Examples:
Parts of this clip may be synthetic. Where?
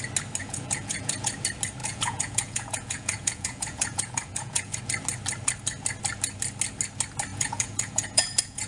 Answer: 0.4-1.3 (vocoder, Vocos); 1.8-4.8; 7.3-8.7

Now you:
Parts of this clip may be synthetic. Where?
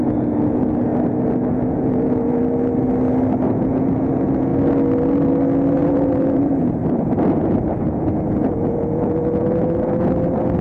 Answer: 0.0-0.9 (vocoder, Vocos); 1.5-2.4; 3.5-4.5; 5.7-6.8; 7.3-10.6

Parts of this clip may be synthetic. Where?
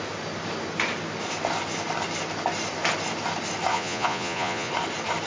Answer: 3.7-4.7 (vocoder, Vocos)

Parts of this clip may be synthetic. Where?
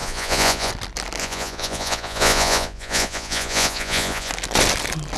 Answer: 0.0-0.7 (vocoder, Vocos); 1.2-4.3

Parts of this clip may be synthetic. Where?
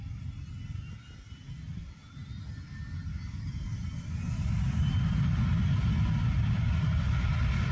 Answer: none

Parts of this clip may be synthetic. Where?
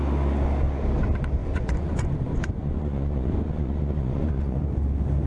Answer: 1.4-4.6 (vocoder, Vocos)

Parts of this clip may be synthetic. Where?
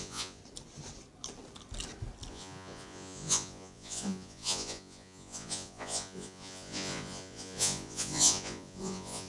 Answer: 0.0-0.4 (vocoder, Vocos); 2.3-9.3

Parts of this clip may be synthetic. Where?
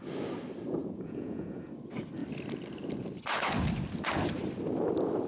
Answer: 0.8-1.7 (vocoder, Vocos)